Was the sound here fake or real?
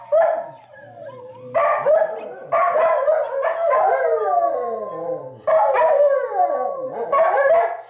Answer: real